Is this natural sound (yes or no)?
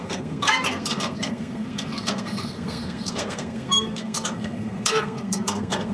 no